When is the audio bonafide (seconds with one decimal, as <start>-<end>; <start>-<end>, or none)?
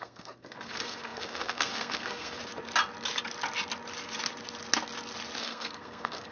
2.4-5.4